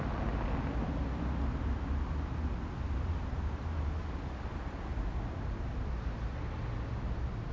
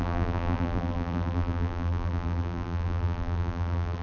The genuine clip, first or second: first